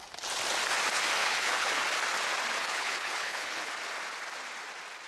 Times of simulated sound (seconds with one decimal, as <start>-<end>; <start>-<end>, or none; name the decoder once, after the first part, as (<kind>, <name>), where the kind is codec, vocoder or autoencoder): 1.2-1.8 (codec, HILCodec); 2.6-3.7